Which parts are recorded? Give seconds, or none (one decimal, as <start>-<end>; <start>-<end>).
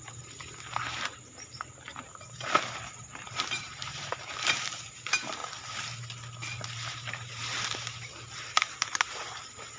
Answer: 5.4-6.6